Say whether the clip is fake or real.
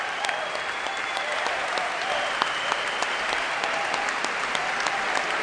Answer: real